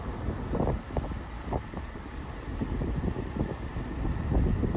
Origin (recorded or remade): recorded